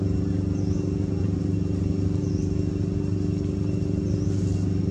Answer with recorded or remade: recorded